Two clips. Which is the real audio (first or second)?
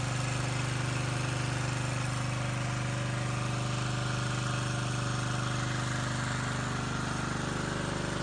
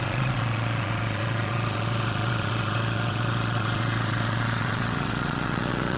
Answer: first